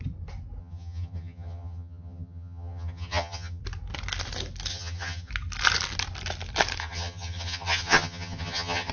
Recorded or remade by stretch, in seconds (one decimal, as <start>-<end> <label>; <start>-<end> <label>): 0.0-0.6 recorded; 0.6-3.6 remade; 3.6-4.7 recorded; 4.7-5.3 remade; 5.3-6.8 recorded; 6.8-8.9 remade